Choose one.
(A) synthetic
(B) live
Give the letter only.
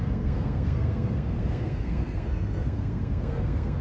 A